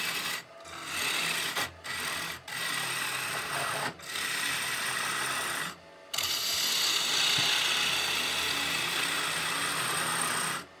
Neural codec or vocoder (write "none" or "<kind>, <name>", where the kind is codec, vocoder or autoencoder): none